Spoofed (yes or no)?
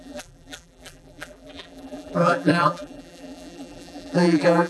yes